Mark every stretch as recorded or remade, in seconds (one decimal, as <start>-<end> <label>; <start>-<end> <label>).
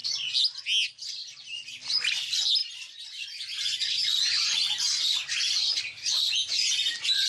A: 0.0-7.3 recorded